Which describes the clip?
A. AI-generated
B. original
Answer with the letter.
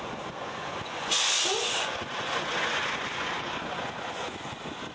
A